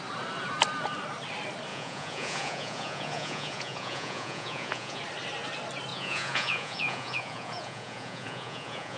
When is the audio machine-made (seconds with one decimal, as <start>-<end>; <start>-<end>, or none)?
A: 1.7-5.0; 5.9-9.0